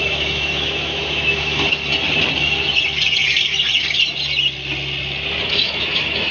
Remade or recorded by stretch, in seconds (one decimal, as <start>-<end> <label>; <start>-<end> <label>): 0.0-1.8 remade; 1.8-5.5 recorded; 5.5-6.3 remade